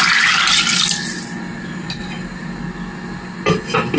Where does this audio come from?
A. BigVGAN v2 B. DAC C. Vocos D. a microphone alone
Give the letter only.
D